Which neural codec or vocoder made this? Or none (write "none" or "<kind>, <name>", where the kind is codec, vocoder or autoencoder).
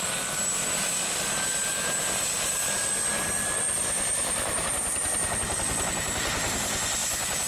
vocoder, BigVGAN v2